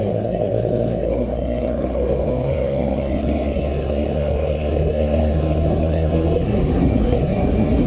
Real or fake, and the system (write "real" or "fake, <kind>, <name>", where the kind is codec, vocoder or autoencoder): fake, codec, SNAC